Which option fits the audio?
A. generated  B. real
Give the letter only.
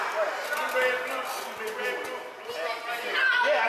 B